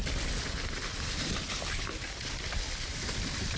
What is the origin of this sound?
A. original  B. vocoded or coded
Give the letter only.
B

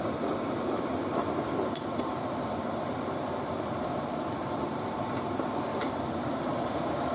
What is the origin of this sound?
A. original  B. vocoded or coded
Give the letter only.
B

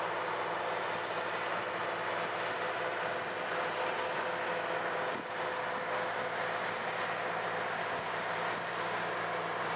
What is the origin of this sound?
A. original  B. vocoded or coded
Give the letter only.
A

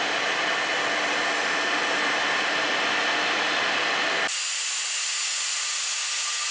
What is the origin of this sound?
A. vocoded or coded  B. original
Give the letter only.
B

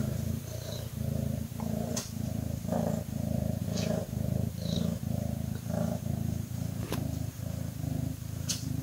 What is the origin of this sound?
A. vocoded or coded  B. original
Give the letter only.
A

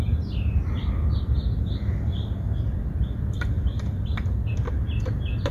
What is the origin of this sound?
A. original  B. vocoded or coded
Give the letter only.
A